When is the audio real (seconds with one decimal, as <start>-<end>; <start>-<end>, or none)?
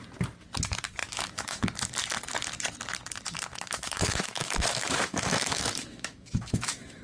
0.0-1.0; 1.6-3.5